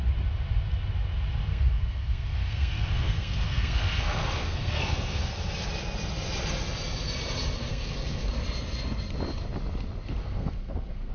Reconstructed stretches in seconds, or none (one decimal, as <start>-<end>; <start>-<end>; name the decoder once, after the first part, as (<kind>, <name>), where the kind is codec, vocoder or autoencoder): 1.5-5.3 (codec, SNAC); 7.7-8.3; 10.2-11.1

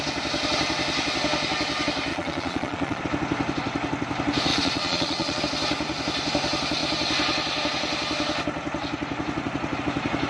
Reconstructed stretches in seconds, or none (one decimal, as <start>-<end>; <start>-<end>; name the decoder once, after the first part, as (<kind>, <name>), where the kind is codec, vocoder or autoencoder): 2.1-3.0 (vocoder, Vocos); 4.5-5.4

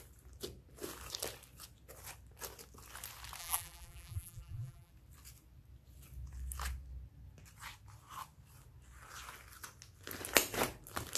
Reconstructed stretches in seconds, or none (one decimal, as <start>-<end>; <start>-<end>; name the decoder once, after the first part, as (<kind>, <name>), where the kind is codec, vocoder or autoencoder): 3.4-4.9 (vocoder, BigVGAN v2)